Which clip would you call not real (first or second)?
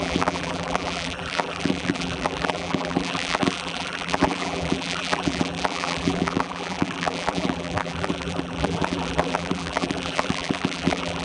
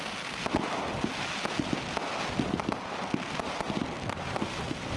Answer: first